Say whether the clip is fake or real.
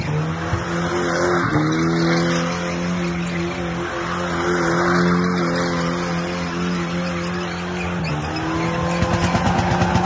real